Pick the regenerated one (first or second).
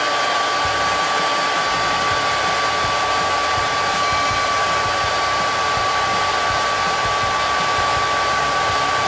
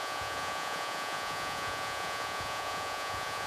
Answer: second